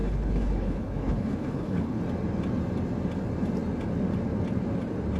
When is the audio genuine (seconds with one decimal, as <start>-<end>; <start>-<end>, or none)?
2.0-5.2